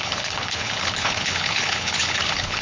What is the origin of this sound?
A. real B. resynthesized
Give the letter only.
B